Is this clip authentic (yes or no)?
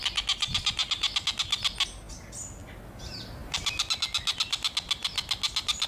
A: yes